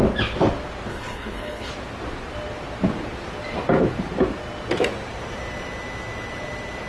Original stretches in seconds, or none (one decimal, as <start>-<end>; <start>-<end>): 0.0-0.9; 1.7-6.9